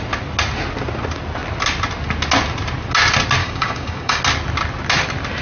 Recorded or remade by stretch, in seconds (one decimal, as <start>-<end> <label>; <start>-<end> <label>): 0.0-3.4 recorded; 3.4-4.2 remade; 4.2-5.4 recorded